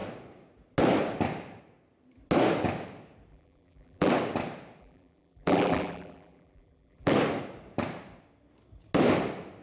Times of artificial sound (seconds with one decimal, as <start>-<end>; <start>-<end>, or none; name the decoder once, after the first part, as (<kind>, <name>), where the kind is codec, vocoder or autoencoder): 3.3-4.1 (vocoder, BigVGAN v2); 4.8-7.1